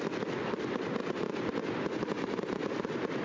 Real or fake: real